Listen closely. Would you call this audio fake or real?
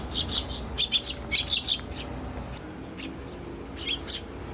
real